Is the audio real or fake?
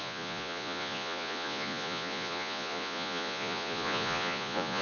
fake